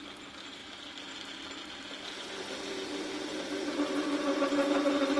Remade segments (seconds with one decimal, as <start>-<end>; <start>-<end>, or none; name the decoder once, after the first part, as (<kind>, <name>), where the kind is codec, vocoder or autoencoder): none